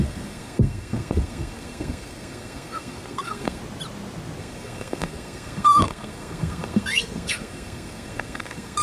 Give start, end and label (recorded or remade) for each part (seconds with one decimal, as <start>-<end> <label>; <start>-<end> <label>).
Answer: 0.0-3.6 remade; 3.6-4.4 recorded; 4.4-8.8 remade